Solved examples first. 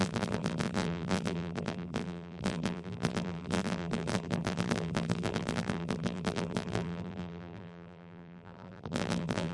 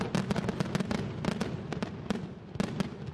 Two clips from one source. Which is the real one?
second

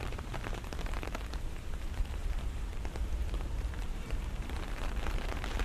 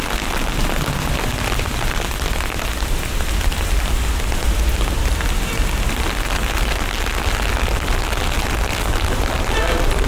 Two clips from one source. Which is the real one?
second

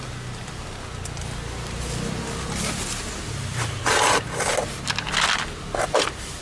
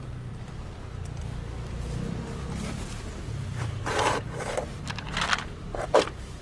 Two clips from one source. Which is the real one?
first